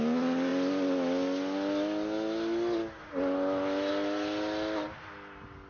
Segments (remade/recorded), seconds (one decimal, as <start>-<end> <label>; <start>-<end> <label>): 0.0-5.7 recorded